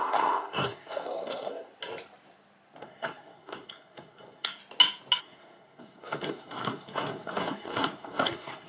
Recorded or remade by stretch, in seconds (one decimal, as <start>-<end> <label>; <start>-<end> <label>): 0.0-1.7 remade; 1.7-2.8 recorded; 2.8-4.6 remade; 4.6-5.2 recorded; 5.2-8.7 remade